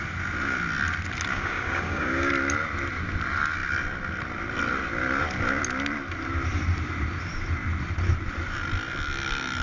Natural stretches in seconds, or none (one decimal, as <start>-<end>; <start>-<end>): 0.0-1.3; 2.3-9.6